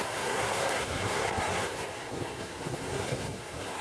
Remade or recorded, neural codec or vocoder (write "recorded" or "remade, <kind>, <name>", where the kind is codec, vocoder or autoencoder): remade, codec, SNAC